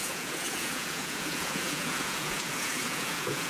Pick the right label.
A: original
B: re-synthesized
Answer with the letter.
B